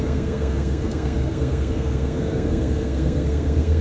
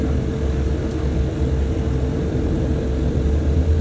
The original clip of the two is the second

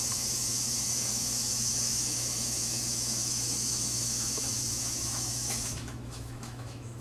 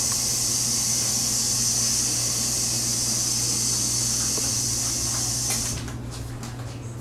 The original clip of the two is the second